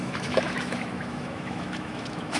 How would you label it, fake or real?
fake